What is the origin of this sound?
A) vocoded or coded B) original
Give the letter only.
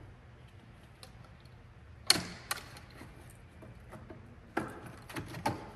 B